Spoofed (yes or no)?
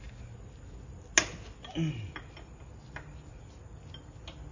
no